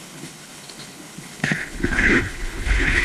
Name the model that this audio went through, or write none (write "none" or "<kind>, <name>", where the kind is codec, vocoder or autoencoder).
codec, HILCodec